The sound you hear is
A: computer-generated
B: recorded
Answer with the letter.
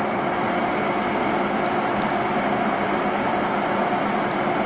A